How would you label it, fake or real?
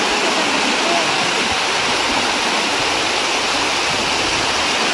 real